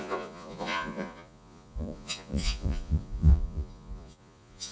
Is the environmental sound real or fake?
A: fake